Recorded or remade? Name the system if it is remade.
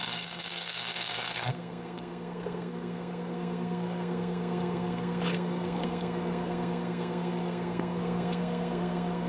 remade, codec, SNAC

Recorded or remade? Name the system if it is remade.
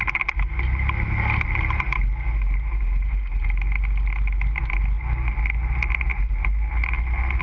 recorded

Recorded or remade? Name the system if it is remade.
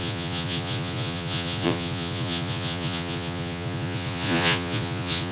remade, vocoder, Vocos